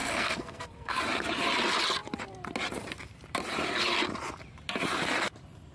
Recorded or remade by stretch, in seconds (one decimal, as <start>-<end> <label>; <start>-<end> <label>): 0.0-1.0 remade; 1.0-5.7 recorded